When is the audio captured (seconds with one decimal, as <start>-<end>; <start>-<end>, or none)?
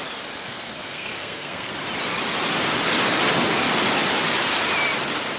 0.0-0.4; 1.7-5.4